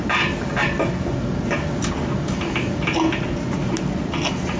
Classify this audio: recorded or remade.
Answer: recorded